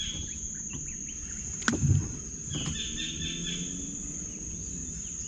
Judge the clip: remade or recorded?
recorded